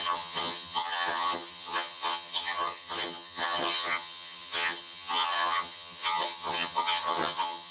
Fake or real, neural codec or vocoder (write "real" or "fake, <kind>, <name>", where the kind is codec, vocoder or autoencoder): fake, vocoder, HiFi-GAN